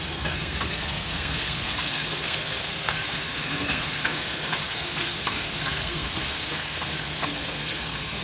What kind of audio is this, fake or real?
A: fake